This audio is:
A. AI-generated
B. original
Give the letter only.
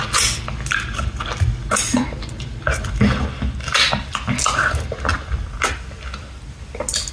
B